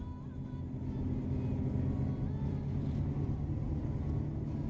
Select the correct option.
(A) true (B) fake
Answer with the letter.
A